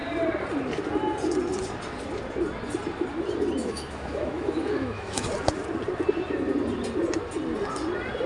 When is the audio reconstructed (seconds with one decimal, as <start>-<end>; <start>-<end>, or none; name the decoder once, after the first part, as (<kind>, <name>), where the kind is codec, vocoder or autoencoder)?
3.6-5.3 (autoencoder, DAC-VAE)